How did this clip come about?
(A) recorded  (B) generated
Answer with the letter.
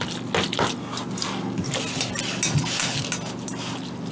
A